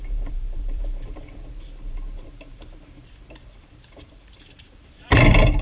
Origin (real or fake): fake